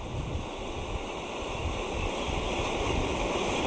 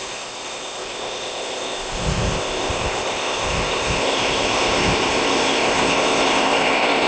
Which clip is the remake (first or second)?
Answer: second